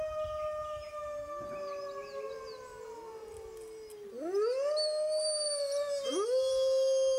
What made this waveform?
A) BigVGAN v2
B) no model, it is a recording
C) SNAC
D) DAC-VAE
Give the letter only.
B